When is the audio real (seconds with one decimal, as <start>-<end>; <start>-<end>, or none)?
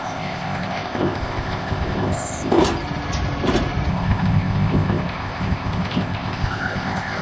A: 2.6-3.9